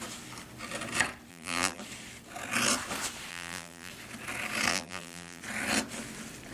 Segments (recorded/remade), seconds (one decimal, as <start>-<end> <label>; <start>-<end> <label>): 0.0-1.3 recorded; 1.3-1.8 remade; 1.8-3.3 recorded; 3.3-3.9 remade; 3.9-4.7 recorded; 4.7-5.4 remade; 5.4-6.5 recorded